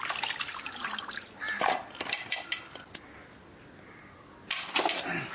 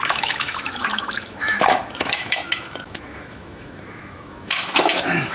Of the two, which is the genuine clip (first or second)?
first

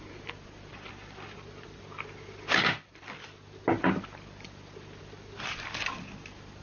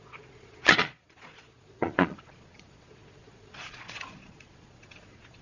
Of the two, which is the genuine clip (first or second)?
first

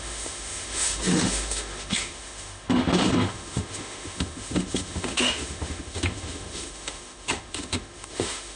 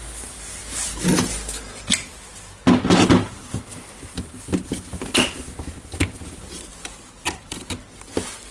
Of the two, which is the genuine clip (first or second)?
second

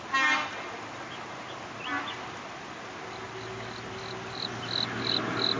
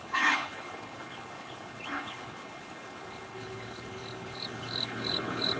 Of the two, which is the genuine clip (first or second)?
first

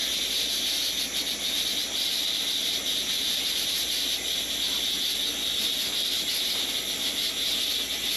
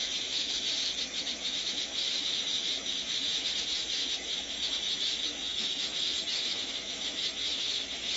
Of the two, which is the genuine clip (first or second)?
first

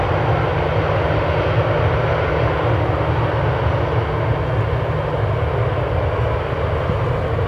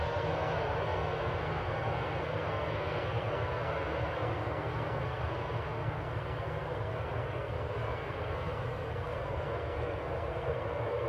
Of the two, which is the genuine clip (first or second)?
first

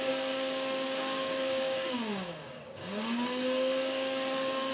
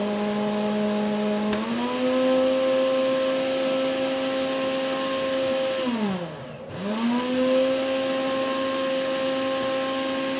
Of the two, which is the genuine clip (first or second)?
second